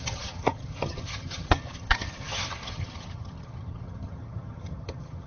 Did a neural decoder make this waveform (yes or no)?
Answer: yes